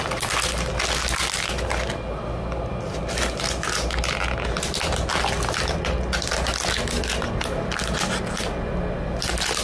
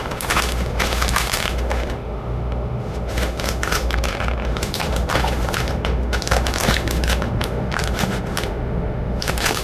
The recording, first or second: first